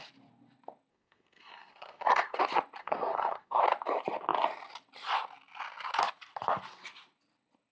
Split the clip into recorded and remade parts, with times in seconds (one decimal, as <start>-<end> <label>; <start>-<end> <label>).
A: 0.0-0.9 recorded; 0.9-2.4 remade; 2.4-2.8 recorded; 2.8-3.6 remade; 3.6-7.7 recorded